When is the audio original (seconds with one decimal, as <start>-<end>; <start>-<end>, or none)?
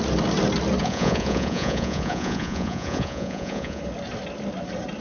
0.0-0.8; 3.8-5.0